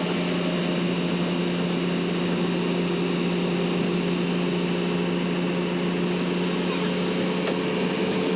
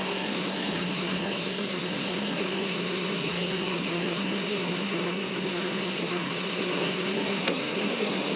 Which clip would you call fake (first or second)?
second